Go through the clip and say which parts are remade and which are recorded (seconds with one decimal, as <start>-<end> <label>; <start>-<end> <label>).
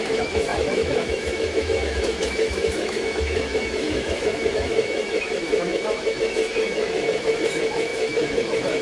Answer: 0.0-8.8 remade